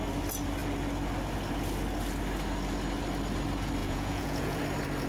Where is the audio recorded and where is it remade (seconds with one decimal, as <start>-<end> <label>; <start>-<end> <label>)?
0.0-3.8 recorded; 3.8-4.6 remade; 4.6-5.1 recorded